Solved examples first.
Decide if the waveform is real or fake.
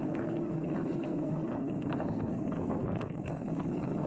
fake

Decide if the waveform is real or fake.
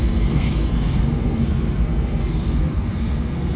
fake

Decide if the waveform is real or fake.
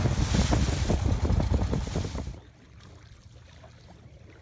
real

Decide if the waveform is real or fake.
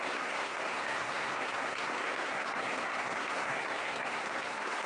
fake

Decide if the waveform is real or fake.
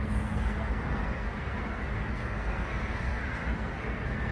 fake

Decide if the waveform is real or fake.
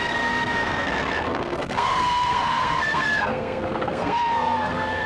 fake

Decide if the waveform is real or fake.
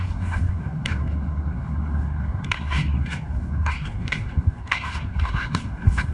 fake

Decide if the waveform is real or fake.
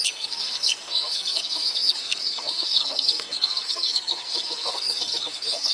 fake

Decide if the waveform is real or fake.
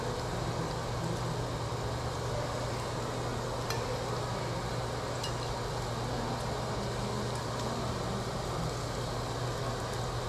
real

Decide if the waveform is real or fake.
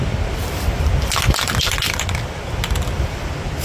real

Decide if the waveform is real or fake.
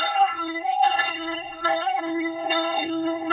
fake